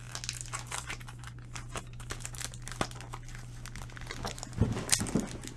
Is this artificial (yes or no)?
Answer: no